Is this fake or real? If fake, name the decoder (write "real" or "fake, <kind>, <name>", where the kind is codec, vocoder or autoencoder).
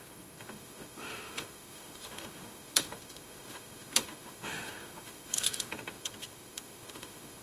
fake, autoencoder, DAC-VAE